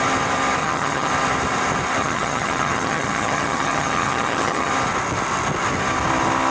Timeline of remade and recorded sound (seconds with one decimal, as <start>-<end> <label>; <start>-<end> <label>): 0.0-0.6 recorded; 0.6-1.1 remade; 1.1-2.0 recorded; 2.0-4.7 remade; 4.7-6.5 recorded